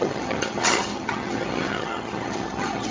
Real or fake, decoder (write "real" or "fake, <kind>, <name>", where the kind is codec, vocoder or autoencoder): fake, vocoder, HiFi-GAN